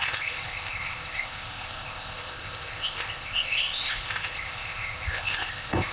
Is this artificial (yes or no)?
yes